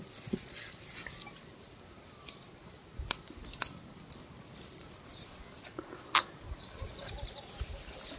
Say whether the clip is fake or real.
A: real